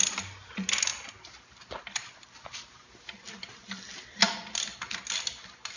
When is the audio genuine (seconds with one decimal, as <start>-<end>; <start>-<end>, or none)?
0.0-5.8